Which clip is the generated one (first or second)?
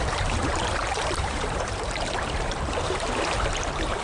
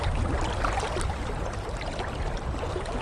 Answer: first